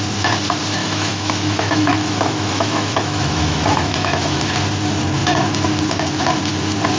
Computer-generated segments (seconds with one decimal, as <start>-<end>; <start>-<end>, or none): 0.8-4.4